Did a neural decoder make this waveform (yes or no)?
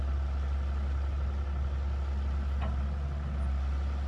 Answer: no